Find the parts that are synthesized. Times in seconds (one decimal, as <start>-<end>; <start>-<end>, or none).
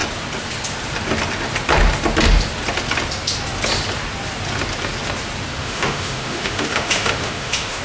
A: 5.6-7.8